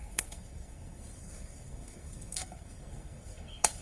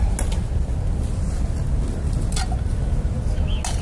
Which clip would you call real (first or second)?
second